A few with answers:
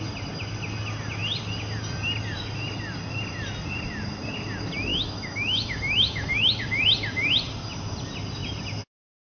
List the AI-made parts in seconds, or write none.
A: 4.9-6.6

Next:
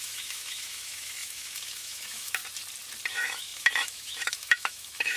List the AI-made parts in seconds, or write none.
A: 0.0-2.4; 3.1-5.2

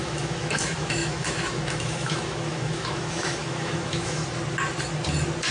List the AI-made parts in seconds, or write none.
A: 0.0-4.2

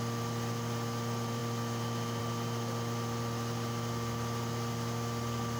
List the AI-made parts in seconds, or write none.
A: none

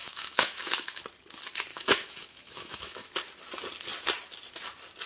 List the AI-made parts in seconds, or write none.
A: 0.0-1.0; 1.7-3.1